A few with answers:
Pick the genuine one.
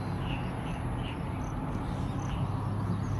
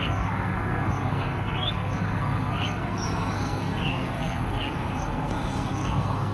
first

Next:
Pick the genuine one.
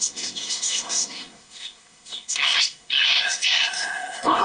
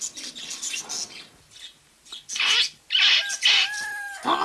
second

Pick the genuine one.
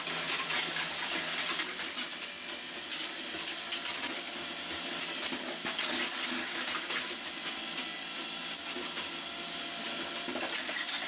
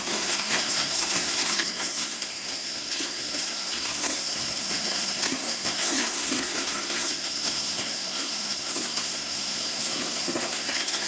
first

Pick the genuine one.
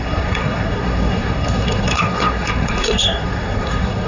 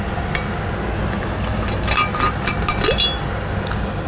second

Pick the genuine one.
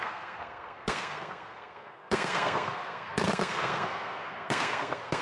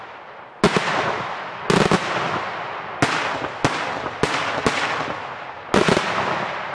second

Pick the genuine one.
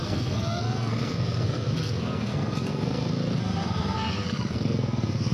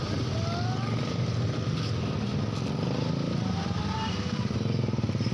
second